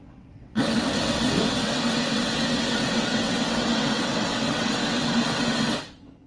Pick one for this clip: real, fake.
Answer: fake